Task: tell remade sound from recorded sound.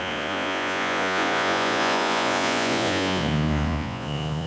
remade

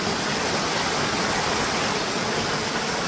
recorded